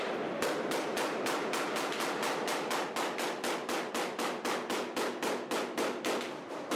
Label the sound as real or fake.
real